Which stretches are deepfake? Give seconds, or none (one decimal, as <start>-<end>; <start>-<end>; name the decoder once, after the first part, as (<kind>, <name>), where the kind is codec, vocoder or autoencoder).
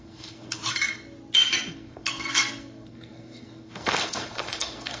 0.0-0.6 (codec, SNAC); 1.7-5.0